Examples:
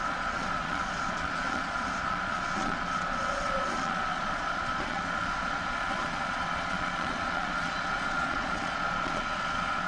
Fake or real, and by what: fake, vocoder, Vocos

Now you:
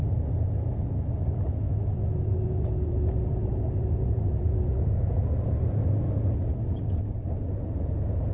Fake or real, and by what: real